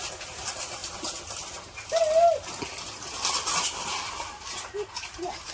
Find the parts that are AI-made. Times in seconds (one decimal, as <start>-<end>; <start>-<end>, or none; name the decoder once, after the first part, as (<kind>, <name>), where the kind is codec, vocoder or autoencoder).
0.0-0.8 (vocoder, BigVGAN v2); 4.1-5.5